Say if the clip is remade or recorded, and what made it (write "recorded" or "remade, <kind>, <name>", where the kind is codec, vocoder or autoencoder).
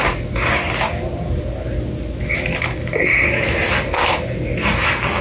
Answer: recorded